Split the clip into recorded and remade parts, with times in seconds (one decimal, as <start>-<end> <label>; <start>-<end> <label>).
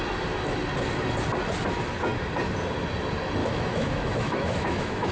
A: 0.0-3.4 recorded; 3.4-5.1 remade